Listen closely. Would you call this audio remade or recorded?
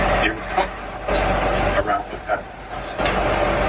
recorded